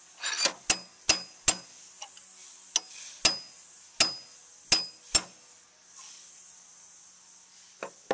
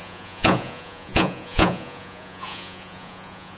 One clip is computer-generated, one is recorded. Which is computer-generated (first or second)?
second